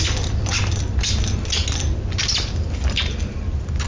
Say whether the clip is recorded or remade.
recorded